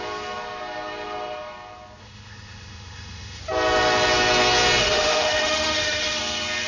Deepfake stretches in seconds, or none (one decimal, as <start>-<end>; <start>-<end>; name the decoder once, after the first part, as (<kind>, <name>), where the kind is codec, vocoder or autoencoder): 2.0-3.4 (autoencoder, DAC-VAE); 4.8-6.2